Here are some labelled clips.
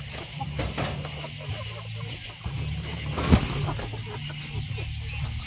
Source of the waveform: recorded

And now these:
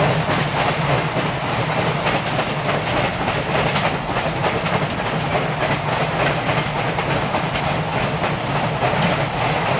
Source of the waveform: recorded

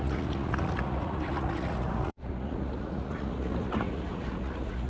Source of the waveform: remade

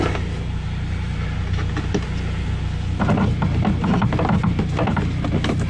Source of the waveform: recorded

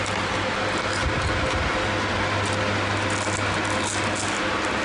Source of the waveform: recorded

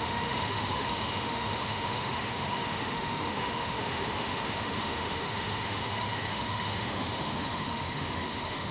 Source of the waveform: remade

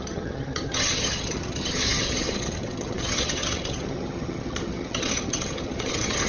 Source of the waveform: remade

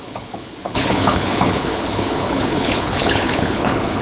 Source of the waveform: remade